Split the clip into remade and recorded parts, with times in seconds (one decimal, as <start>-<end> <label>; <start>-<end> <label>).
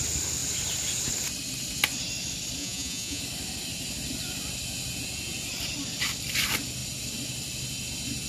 0.0-2.6 recorded; 2.6-3.2 remade; 3.2-8.3 recorded